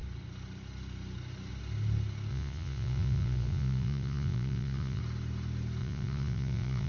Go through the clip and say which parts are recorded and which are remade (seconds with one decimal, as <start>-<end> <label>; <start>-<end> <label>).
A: 0.0-2.3 recorded; 2.3-5.0 remade; 5.0-5.8 recorded; 5.8-6.9 remade